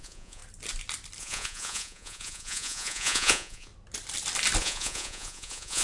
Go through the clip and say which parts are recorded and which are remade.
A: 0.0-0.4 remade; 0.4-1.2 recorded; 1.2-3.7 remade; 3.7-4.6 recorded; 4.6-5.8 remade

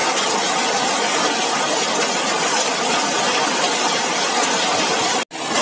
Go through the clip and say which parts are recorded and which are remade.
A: 0.0-5.6 recorded

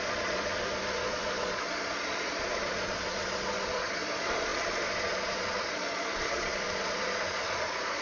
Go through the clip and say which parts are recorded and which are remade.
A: 0.0-8.0 remade